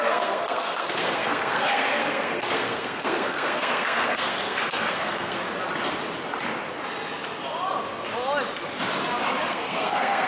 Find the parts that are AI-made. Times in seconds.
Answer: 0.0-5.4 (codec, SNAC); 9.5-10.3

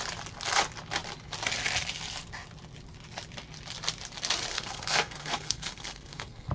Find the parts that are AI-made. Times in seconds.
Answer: 4.5-6.5 (codec, SNAC)

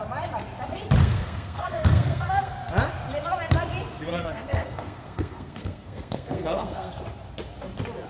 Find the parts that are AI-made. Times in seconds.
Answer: 1.0-2.7 (codec, SNAC); 4.1-6.9

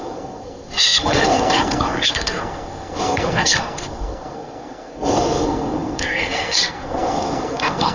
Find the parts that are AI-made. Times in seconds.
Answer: 0.0-7.9 (codec, SNAC)

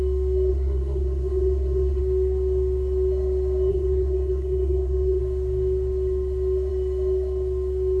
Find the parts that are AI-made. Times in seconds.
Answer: 0.5-2.0 (codec, SNAC); 3.7-5.2

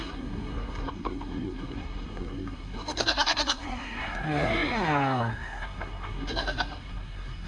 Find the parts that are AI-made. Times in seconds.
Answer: 0.0-7.5 (codec, SNAC)